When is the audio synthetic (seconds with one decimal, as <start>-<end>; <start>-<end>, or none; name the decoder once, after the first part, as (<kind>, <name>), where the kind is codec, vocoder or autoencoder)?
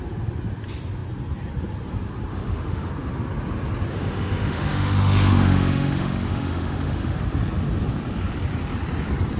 2.3-2.9 (autoencoder, DAC-VAE); 3.9-7.2